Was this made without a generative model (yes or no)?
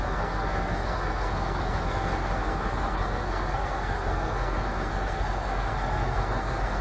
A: no